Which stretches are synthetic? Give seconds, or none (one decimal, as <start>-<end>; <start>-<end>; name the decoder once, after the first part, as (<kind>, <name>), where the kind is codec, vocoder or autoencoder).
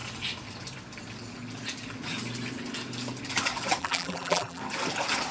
3.8-4.6 (vocoder, BigVGAN v2)